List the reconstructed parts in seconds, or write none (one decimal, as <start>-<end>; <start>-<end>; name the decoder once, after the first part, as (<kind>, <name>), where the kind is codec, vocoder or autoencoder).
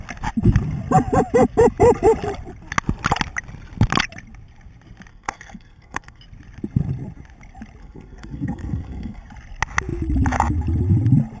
5.1-6.2 (codec, SNAC); 7.8-9.3